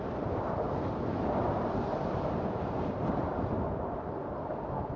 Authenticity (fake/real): real